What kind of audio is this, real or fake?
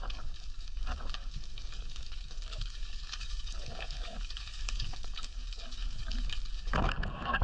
fake